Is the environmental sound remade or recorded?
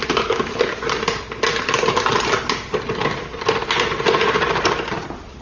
recorded